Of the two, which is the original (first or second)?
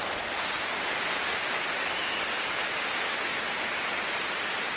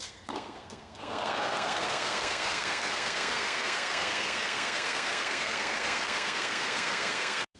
first